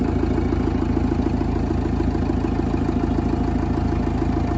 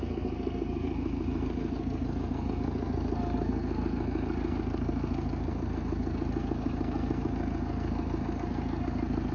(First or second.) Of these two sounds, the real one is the first